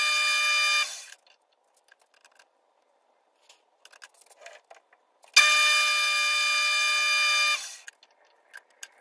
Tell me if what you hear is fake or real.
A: real